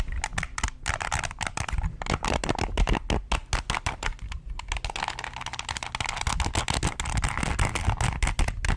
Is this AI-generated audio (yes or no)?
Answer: no